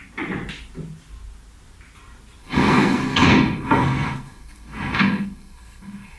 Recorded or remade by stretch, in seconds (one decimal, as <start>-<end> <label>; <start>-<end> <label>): 0.0-2.4 recorded; 2.4-6.2 remade